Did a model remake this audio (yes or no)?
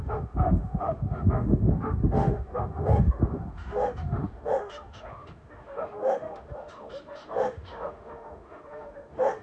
yes